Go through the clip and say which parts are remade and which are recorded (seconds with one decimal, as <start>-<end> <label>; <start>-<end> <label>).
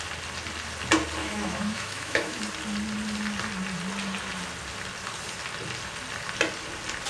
0.0-1.2 recorded; 1.2-2.4 remade; 2.4-7.1 recorded